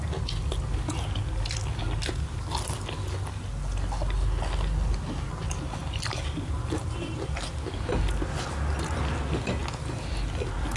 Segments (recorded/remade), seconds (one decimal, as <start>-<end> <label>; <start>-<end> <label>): 0.0-10.8 recorded

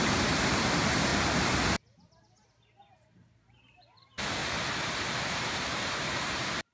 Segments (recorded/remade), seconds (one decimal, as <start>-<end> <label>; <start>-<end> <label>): 0.0-1.1 remade; 1.1-2.9 recorded; 2.9-4.4 remade; 4.4-5.2 recorded; 5.2-6.7 remade

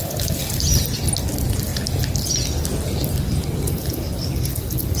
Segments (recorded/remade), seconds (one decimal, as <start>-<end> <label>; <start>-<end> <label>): 0.0-5.0 recorded